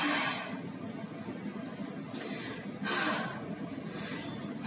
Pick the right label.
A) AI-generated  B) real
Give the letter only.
B